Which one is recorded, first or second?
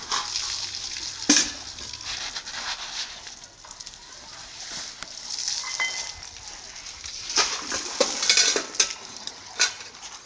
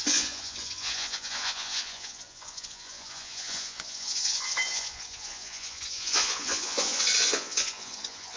first